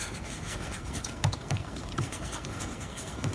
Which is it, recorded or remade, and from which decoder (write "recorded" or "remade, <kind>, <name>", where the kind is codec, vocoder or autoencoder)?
remade, codec, SNAC